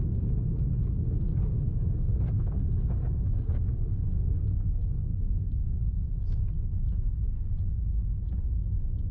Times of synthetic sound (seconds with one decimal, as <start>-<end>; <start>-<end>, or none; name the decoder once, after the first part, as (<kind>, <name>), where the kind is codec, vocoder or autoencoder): 1.3-6.4 (codec, SNAC)